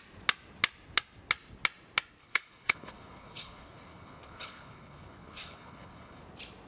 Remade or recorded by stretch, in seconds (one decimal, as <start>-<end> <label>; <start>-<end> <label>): 0.0-2.2 recorded; 2.2-6.2 remade; 6.2-6.7 recorded